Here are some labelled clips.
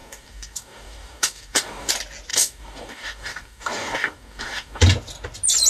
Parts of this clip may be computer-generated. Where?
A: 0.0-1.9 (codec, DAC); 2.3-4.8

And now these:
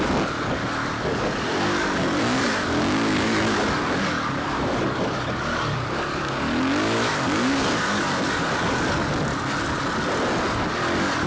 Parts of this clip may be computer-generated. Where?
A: 0.0-9.3 (codec, DAC); 10.7-11.3

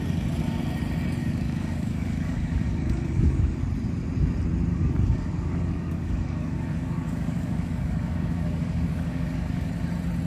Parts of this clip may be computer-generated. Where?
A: 1.2-3.6 (codec, DAC); 4.7-9.7

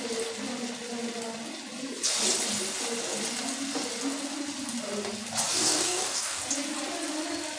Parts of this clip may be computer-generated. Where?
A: 5.5-6.4 (codec, DAC)